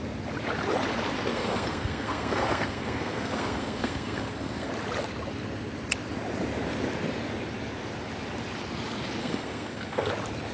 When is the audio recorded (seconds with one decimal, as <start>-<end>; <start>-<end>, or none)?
0.0-1.3; 4.7-9.2; 10.1-10.5